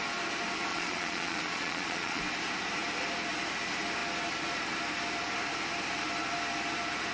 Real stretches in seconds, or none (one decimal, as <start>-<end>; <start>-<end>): 0.0-0.7; 2.2-7.1